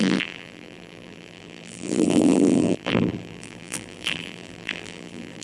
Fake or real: fake